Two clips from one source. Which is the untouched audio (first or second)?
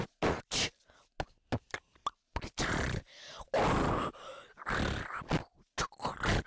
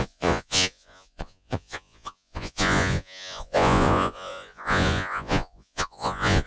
first